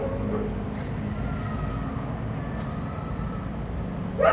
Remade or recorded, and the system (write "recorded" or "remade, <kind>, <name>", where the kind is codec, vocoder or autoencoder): recorded